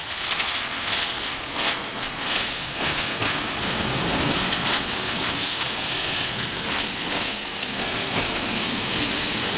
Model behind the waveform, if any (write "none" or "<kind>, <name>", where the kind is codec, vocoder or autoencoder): codec, SNAC